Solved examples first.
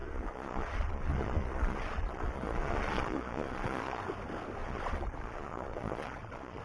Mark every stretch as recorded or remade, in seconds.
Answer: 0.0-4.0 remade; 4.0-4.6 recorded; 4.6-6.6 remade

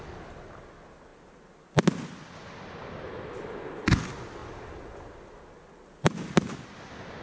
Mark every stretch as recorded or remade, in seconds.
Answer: 0.0-7.2 recorded

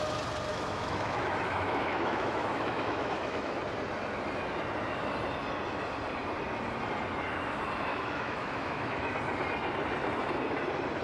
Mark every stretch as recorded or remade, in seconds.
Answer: 0.0-0.5 recorded; 0.5-3.6 remade; 3.6-7.9 recorded; 7.9-9.1 remade; 9.1-11.0 recorded

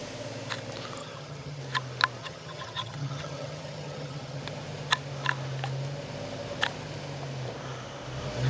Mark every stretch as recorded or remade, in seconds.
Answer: 0.0-1.0 recorded; 1.0-1.6 remade; 1.6-2.2 recorded; 2.2-4.4 remade; 4.4-8.5 recorded

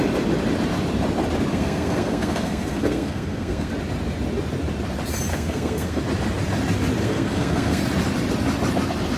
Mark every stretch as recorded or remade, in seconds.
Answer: 0.0-1.5 recorded; 1.5-3.7 remade; 3.7-5.3 recorded; 5.3-6.0 remade; 6.0-7.0 recorded; 7.0-7.8 remade; 7.8-9.2 recorded